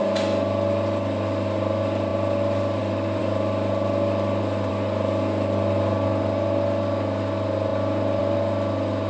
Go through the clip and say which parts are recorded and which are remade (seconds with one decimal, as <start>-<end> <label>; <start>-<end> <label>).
0.0-9.1 recorded